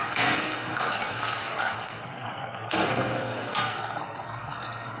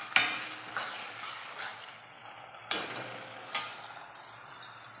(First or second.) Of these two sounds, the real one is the second